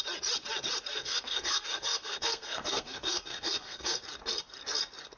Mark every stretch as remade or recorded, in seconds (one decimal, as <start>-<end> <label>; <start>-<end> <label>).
0.0-0.9 recorded; 0.9-4.0 remade; 4.0-5.2 recorded